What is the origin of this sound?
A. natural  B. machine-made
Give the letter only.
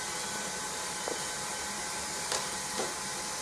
B